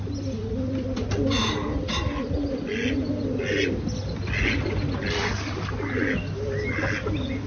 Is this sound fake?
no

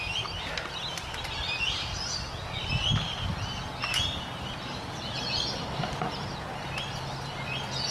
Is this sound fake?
no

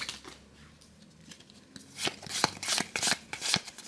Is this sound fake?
no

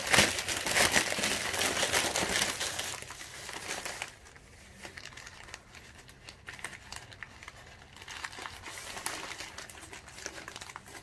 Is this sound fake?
no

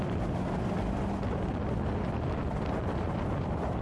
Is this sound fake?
no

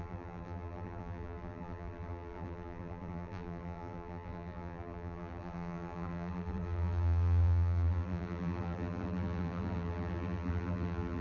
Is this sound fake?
yes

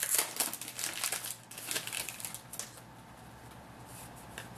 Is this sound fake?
no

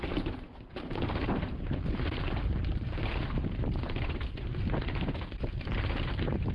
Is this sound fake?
yes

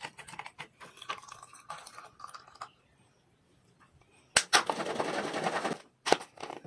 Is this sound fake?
no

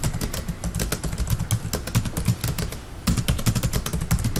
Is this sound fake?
no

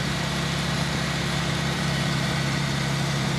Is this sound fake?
yes